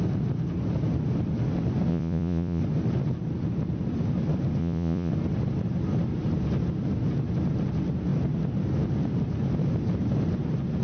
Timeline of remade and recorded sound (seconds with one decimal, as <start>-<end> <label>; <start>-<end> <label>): 0.0-1.9 recorded; 1.9-2.6 remade; 2.6-4.6 recorded; 4.6-5.1 remade; 5.1-10.8 recorded